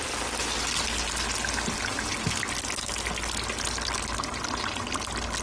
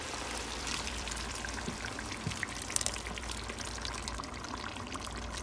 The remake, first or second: second